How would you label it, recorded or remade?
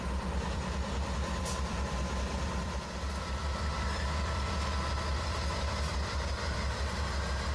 remade